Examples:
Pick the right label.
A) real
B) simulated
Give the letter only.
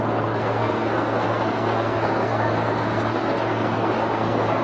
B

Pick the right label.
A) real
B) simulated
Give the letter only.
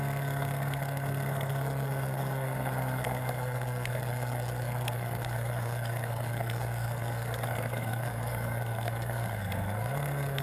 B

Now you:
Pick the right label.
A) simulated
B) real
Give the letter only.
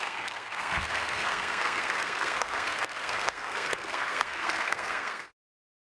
A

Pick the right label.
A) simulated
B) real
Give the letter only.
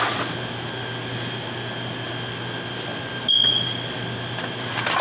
B